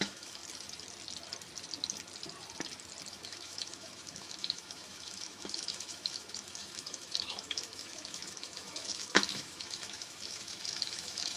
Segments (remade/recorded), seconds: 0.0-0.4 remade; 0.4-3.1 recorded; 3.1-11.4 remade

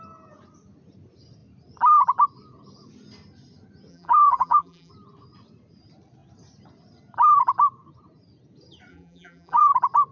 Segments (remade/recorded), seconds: 0.0-3.9 recorded; 3.9-4.9 remade; 4.9-8.9 recorded; 8.9-9.6 remade; 9.6-10.1 recorded